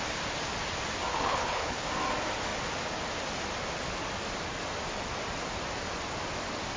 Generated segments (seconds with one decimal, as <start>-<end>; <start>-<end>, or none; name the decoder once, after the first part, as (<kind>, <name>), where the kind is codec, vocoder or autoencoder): 1.1-1.9 (codec, HILCodec)